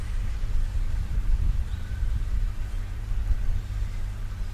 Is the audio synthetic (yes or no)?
yes